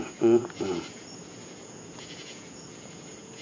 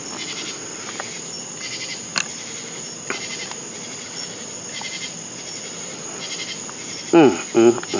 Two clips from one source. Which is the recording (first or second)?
second